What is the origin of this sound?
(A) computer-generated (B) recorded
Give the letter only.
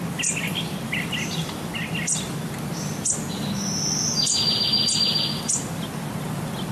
B